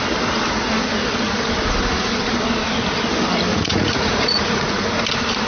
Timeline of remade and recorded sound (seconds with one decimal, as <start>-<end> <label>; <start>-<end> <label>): 0.0-3.5 recorded; 3.5-4.8 remade; 4.8-5.5 recorded